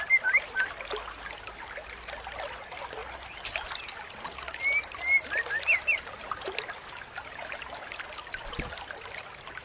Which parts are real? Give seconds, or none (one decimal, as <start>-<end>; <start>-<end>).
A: 0.0-9.6